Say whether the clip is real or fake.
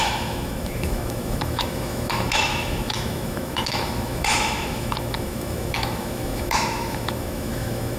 fake